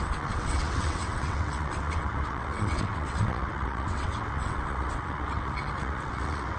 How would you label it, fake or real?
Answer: fake